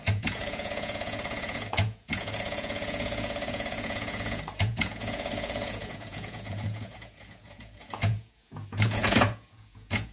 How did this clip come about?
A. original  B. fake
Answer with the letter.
B